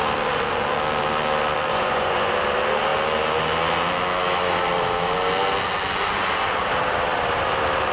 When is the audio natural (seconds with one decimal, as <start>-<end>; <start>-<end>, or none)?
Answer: 0.0-1.7; 2.3-7.9

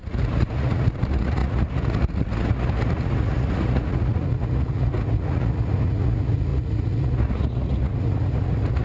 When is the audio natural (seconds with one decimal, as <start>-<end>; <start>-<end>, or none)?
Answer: none

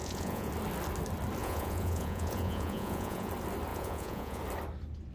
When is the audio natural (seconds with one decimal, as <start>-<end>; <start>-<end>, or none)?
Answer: 0.5-1.4; 3.3-3.7; 4.4-5.1

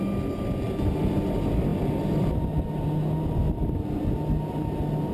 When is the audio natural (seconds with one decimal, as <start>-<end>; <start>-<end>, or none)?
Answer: 0.0-5.1